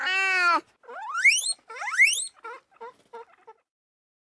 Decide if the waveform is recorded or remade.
recorded